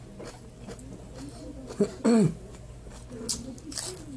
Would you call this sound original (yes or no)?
yes